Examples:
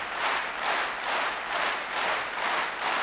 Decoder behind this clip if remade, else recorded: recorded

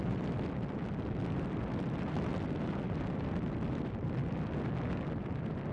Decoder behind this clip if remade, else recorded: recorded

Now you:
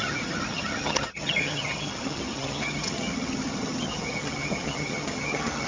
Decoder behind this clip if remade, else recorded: remade, vocoder, HiFi-GAN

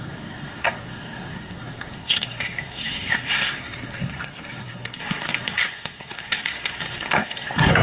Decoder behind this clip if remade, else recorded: remade, codec, SNAC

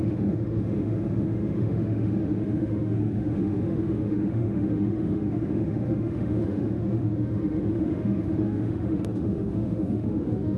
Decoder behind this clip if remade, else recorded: remade, autoencoder, DAC-VAE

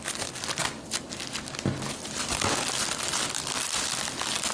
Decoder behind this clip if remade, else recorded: recorded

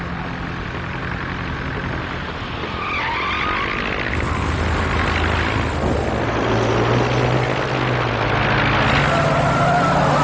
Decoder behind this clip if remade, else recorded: recorded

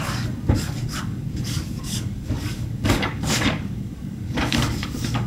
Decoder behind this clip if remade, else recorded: remade, codec, DAC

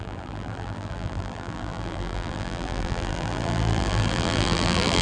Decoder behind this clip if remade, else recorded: remade, vocoder, BigVGAN v2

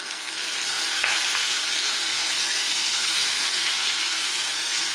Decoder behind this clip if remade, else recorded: remade, codec, SNAC